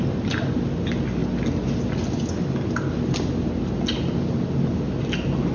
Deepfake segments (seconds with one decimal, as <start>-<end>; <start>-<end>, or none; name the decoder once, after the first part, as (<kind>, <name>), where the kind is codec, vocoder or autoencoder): none